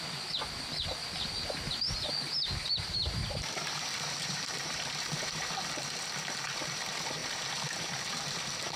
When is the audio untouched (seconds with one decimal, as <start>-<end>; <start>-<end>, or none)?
0.0-2.6; 5.5-8.8